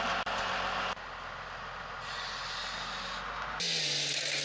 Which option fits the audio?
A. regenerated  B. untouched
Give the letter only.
B